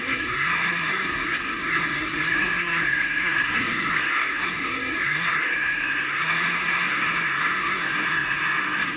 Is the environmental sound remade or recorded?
remade